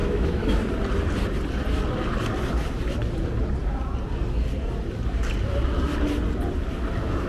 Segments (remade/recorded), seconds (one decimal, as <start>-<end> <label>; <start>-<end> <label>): 0.0-0.6 remade; 0.6-7.3 recorded